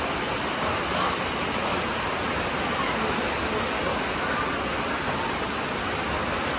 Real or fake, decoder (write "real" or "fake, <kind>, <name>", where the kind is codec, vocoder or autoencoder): real